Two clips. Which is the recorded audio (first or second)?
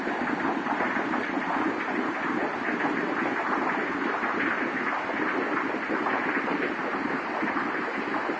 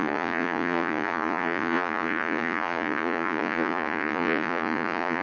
first